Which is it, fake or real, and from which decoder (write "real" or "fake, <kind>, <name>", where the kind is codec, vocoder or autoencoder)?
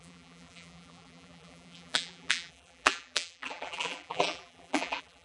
fake, vocoder, BigVGAN v2